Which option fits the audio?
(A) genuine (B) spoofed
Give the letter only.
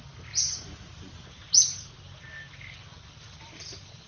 A